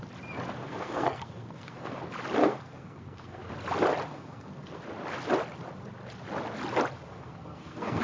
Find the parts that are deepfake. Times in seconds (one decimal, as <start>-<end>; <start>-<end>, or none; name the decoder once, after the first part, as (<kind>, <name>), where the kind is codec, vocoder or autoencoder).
0.6-2.0 (codec, SNAC); 2.4-3.5; 4.1-4.8; 7.1-8.0